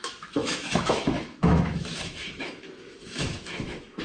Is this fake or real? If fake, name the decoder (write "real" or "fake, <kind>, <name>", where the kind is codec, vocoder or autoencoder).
fake, autoencoder, DAC-VAE